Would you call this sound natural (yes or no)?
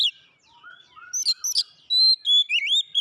yes